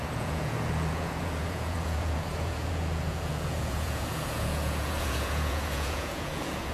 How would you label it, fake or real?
fake